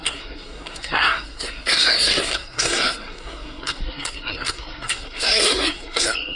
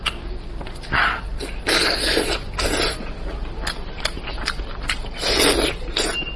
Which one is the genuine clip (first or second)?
second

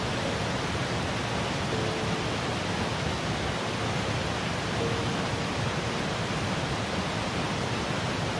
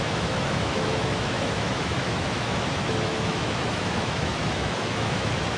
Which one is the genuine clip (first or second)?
first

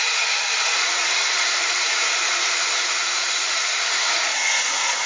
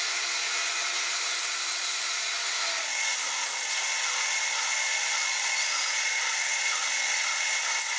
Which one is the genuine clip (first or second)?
second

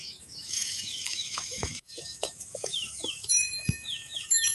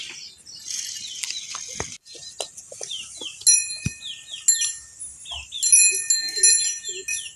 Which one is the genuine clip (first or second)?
second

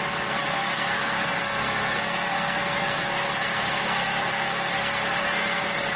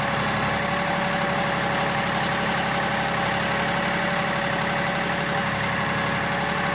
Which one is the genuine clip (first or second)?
second